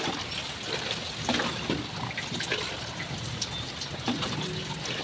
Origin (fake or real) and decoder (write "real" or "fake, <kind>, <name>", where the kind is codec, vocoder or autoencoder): real